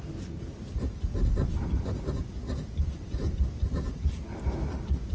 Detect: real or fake real